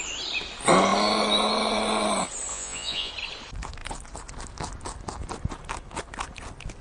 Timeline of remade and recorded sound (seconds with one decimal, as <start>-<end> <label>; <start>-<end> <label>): 0.0-2.5 recorded; 2.5-3.1 remade; 3.1-6.8 recorded